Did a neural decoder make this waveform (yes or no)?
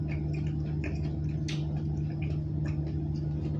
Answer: no